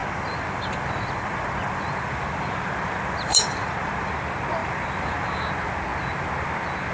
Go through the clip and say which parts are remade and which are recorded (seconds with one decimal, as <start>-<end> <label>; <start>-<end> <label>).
0.0-4.1 remade; 4.1-4.6 recorded; 4.6-5.4 remade; 5.4-6.9 recorded